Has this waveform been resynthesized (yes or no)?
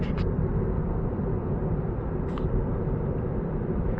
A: yes